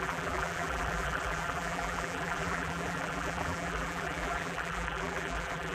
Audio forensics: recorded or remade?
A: remade